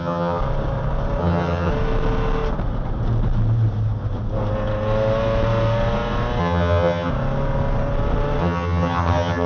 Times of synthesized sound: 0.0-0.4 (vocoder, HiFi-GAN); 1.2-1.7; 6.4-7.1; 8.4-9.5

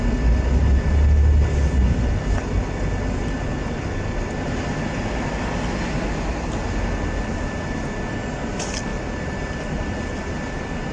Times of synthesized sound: 8.9-9.7 (vocoder, BigVGAN v2)